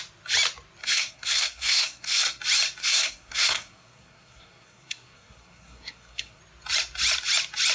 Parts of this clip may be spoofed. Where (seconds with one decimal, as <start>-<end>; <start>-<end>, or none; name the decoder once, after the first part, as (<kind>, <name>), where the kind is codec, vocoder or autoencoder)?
0.8-2.4 (codec, SNAC); 2.8-6.4